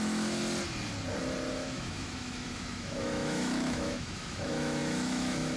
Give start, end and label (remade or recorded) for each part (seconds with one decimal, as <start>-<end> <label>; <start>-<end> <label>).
0.0-0.4 remade; 0.4-1.5 recorded; 1.5-5.6 remade

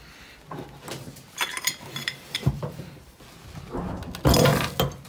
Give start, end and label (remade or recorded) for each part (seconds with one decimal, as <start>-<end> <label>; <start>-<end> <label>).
0.0-1.5 recorded; 1.5-3.2 remade; 3.2-5.1 recorded

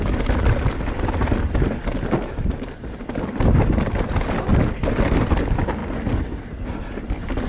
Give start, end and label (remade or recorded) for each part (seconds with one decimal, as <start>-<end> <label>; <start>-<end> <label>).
0.0-7.5 recorded